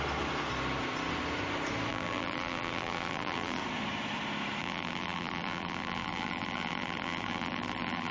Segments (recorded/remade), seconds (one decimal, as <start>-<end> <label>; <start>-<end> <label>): 0.0-1.9 recorded; 1.9-3.6 remade; 3.6-4.6 recorded; 4.6-8.1 remade